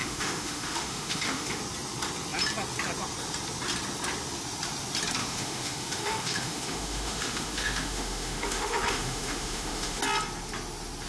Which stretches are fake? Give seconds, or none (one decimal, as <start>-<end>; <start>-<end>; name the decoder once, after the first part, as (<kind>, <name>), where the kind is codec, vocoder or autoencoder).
0.0-1.6 (autoencoder, DAC-VAE); 5.2-10.0